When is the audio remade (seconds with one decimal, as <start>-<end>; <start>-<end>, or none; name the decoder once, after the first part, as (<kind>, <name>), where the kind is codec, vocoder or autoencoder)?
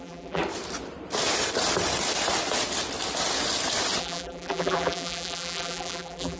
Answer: 0.0-0.4 (vocoder, BigVGAN v2); 4.0-6.4